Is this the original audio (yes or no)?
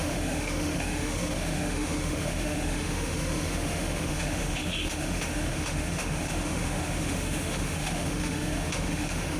no